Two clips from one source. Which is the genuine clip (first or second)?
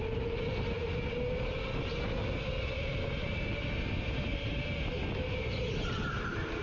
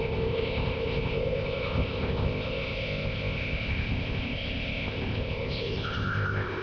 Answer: first